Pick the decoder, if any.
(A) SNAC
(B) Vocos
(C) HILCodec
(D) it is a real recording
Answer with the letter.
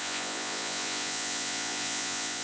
B